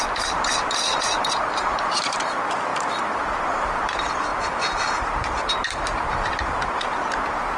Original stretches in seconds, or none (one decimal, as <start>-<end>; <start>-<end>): none